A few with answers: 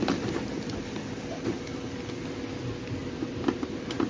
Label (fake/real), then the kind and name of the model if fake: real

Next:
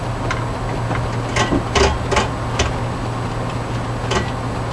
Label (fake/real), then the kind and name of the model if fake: real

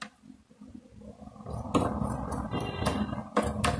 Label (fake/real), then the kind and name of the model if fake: real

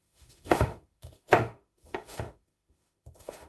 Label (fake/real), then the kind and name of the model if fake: fake, autoencoder, DAC-VAE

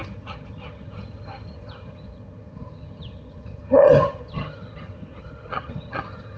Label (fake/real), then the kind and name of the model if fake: fake, vocoder, HiFi-GAN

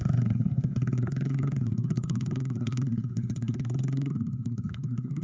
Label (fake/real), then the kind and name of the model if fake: fake, codec, SNAC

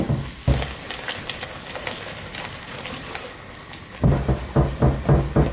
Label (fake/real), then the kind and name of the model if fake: real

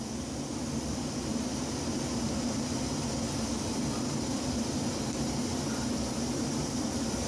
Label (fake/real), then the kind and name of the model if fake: real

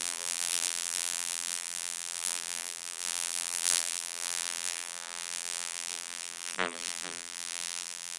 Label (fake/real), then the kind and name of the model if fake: fake, vocoder, BigVGAN v2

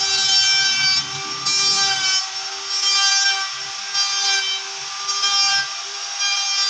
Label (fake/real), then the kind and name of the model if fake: real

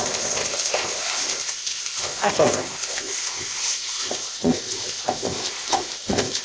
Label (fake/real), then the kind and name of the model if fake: fake, codec, ZipCodec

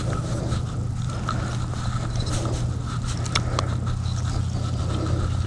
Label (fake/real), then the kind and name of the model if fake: real